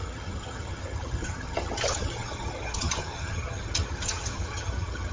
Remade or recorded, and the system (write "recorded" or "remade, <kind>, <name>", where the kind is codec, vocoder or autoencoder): remade, vocoder, HiFi-GAN